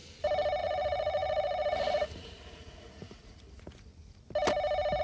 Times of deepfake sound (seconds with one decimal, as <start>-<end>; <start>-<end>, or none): 0.6-3.9